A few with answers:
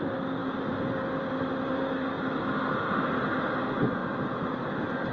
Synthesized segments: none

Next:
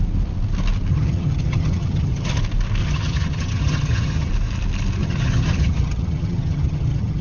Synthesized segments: 0.9-2.4; 2.8-4.3; 5.0-7.2

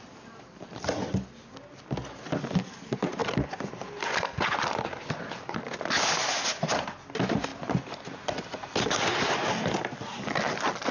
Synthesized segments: none

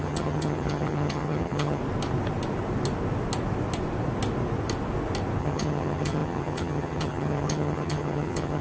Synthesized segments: 0.0-1.8; 5.4-8.6

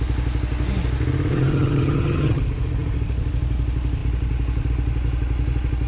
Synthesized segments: 1.3-2.4

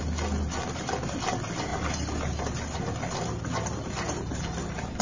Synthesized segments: none

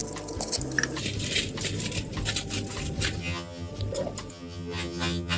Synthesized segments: 3.2-3.7; 4.3-5.4